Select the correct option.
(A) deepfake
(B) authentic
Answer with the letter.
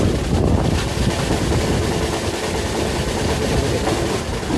B